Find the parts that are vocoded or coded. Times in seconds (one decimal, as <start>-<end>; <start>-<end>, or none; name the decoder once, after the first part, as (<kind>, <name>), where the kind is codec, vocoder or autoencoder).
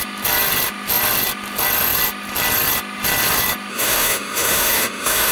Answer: 3.7-5.3 (autoencoder, DAC-VAE)